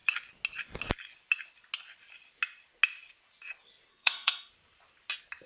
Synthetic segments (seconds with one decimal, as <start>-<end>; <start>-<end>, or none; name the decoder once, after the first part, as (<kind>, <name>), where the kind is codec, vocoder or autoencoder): 3.9-4.5 (codec, SNAC)